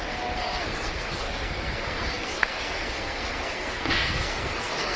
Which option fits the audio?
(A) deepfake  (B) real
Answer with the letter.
A